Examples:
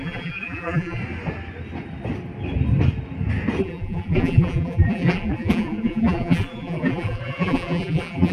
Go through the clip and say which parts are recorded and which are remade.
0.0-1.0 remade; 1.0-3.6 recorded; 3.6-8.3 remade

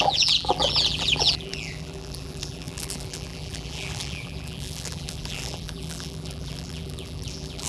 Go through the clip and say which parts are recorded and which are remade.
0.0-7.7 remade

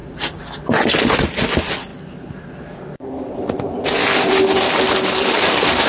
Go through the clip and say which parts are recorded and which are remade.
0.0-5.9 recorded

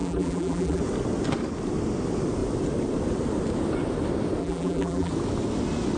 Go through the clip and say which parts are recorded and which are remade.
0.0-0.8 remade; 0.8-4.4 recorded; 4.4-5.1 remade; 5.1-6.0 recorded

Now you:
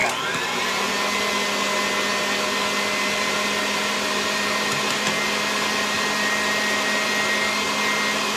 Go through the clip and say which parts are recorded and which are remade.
0.0-8.4 recorded

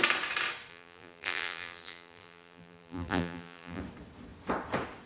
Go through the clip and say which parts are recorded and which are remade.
0.0-0.7 recorded; 0.7-3.8 remade; 3.8-5.1 recorded